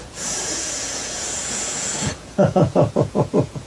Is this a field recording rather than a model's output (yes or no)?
no